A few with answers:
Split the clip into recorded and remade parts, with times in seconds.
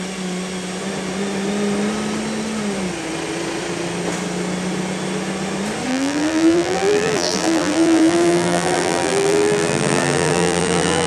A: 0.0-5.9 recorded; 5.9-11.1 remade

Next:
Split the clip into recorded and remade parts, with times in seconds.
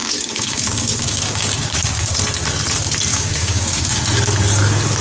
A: 0.0-2.2 remade; 2.2-3.1 recorded; 3.1-4.0 remade; 4.0-5.0 recorded